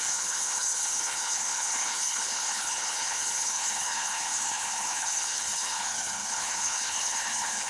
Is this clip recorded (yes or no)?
no